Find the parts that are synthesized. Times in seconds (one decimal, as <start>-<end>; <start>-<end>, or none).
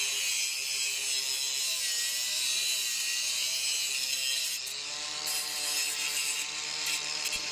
0.0-1.0; 5.4-7.5